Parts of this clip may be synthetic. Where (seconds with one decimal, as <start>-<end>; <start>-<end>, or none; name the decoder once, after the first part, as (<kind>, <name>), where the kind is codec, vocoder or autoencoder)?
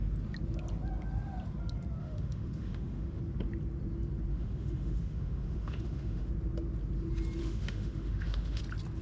2.0-3.2 (autoencoder, DAC-VAE); 4.3-6.3; 7.4-8.6